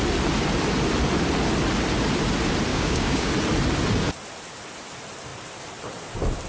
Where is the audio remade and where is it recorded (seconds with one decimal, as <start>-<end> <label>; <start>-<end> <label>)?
0.0-2.7 recorded; 2.7-3.3 remade; 3.3-6.5 recorded